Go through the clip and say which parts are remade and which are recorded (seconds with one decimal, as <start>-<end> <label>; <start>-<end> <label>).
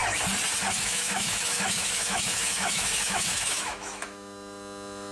0.0-0.8 recorded; 0.8-5.1 remade